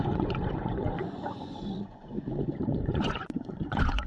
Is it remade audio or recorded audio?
remade